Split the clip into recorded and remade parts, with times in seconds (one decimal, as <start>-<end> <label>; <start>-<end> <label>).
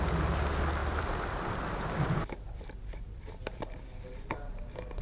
0.0-0.8 recorded; 0.8-3.4 remade; 3.4-5.0 recorded